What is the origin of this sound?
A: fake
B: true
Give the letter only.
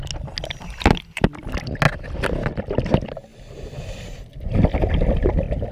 B